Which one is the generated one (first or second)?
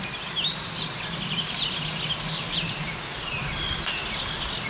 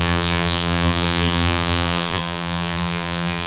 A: second